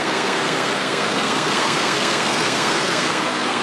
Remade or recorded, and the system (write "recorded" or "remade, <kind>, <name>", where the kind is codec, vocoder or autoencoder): remade, codec, SNAC